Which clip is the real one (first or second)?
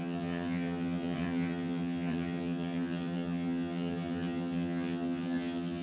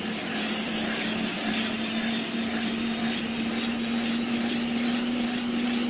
second